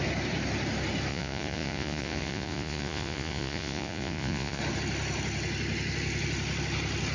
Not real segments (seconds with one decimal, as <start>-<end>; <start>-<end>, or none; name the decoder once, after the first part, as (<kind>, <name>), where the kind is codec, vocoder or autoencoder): 1.1-4.6 (vocoder, Vocos)